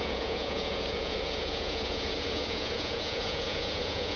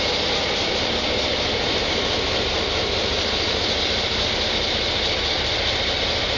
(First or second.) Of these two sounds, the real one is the second